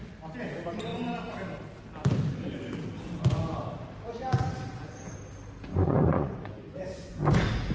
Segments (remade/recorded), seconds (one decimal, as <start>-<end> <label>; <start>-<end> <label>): 0.0-5.7 recorded; 5.7-7.2 remade; 7.2-7.7 recorded

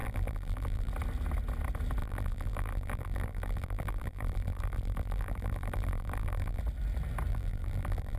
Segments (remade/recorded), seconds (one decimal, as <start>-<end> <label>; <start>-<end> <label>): 0.0-0.9 remade; 0.9-2.0 recorded; 2.0-6.6 remade; 6.6-7.3 recorded; 7.3-8.2 remade

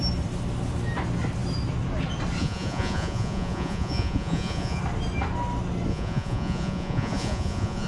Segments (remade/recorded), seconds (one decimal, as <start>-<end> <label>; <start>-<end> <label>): 0.0-2.4 recorded; 2.4-4.8 remade; 4.8-5.9 recorded; 5.9-7.9 remade

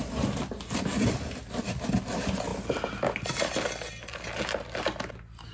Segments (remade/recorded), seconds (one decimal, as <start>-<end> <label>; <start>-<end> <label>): 0.0-5.5 recorded

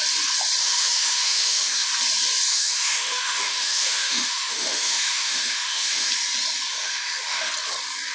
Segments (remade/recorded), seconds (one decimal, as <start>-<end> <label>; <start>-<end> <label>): 0.0-0.6 recorded; 0.6-1.9 remade; 1.9-2.5 recorded; 2.5-6.1 remade; 6.1-6.8 recorded; 6.8-7.5 remade; 7.5-8.1 recorded